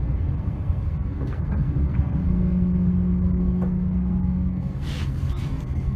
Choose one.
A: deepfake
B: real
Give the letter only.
A